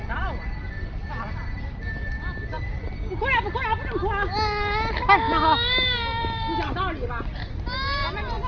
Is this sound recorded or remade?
recorded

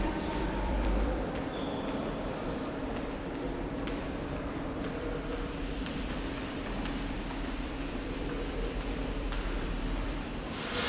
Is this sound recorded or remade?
remade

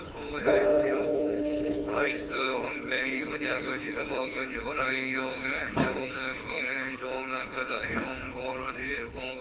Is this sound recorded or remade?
remade